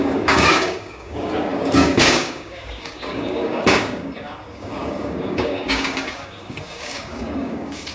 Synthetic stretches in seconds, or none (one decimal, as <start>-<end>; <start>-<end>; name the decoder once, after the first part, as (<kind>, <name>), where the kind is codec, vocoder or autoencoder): 0.0-7.9 (codec, DAC)